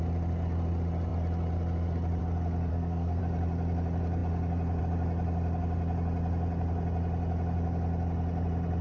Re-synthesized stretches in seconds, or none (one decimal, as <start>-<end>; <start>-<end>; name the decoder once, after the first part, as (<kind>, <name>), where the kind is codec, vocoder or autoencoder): 2.7-3.2 (codec, SNAC)